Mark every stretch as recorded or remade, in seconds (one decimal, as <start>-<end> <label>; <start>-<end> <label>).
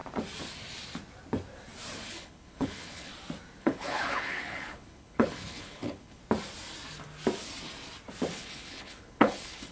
0.0-2.1 recorded; 2.1-3.1 remade; 3.1-3.6 recorded; 3.6-6.2 remade; 6.2-8.3 recorded; 8.3-9.7 remade